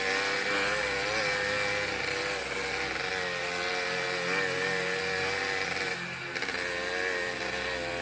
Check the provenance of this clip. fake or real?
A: real